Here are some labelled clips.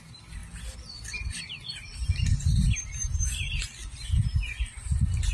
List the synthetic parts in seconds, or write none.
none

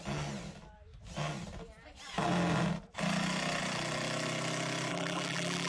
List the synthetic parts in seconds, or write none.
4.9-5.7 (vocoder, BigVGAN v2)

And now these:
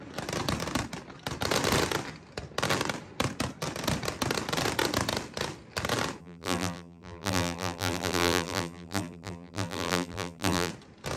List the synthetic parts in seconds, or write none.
6.2-10.7 (vocoder, BigVGAN v2)

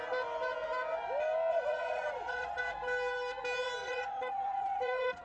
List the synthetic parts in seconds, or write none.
1.5-2.6 (vocoder, Vocos); 3.8-5.2